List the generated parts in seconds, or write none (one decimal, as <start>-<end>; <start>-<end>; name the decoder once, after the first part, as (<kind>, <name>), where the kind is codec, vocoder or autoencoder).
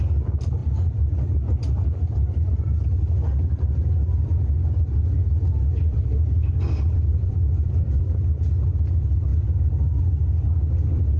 5.9-8.0 (vocoder, BigVGAN v2); 9.3-10.0